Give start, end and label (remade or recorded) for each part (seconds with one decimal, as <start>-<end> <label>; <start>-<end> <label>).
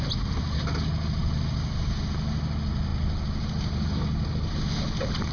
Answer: 0.0-5.3 recorded